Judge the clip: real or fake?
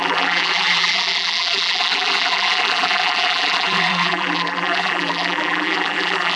fake